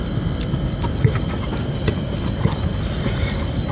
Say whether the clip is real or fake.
real